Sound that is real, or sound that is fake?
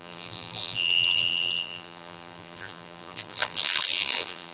fake